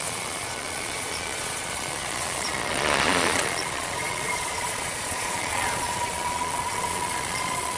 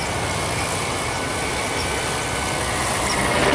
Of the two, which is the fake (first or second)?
first